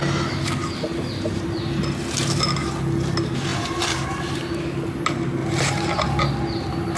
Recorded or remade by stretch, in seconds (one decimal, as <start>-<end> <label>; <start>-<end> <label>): 0.0-0.9 recorded; 0.9-1.7 remade; 1.7-3.5 recorded; 3.5-4.6 remade; 4.6-7.0 recorded

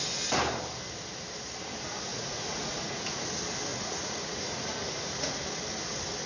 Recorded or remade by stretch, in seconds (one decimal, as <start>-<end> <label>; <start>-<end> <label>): 0.0-2.1 recorded; 2.1-3.1 remade; 3.1-3.7 recorded; 3.7-5.4 remade; 5.4-6.3 recorded

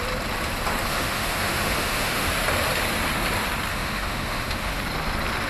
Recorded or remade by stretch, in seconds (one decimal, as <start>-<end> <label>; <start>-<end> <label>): 0.0-0.9 recorded; 0.9-2.3 remade; 2.3-3.7 recorded; 3.7-4.8 remade; 4.8-5.5 recorded

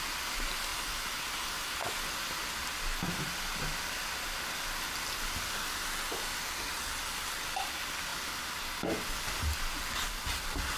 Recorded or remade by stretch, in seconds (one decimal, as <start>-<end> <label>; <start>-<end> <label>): 0.0-10.8 recorded

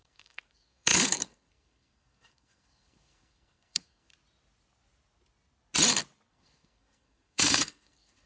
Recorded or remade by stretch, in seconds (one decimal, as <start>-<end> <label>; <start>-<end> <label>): 0.0-4.1 remade; 4.1-6.3 recorded; 6.3-8.3 remade

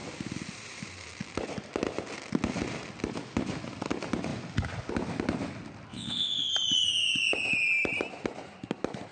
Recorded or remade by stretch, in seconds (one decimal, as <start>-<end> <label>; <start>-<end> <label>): 0.0-5.9 recorded; 5.9-6.5 remade; 6.5-9.1 recorded

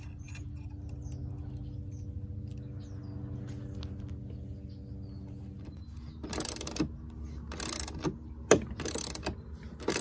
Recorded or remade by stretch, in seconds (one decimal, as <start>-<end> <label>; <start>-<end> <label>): 0.0-10.0 recorded